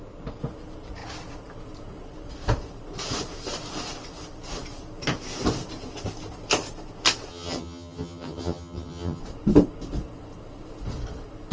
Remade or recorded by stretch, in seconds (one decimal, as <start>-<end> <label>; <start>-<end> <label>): 0.0-7.3 recorded; 7.3-9.2 remade; 9.2-11.5 recorded